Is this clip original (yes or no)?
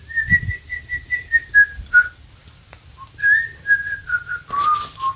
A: yes